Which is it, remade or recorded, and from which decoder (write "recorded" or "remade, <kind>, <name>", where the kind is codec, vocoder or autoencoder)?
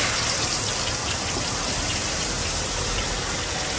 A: recorded